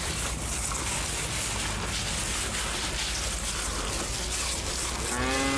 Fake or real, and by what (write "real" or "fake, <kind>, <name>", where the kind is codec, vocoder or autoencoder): real